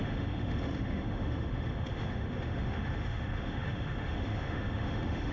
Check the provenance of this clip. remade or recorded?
remade